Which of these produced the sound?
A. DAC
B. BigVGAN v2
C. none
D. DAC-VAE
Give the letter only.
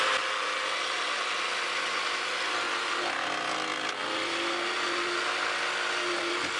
C